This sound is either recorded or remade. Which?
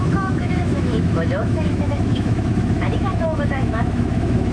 remade